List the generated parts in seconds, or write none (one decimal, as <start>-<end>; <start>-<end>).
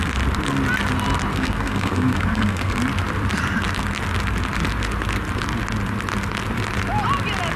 1.3-2.8